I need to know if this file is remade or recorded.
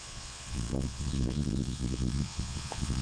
remade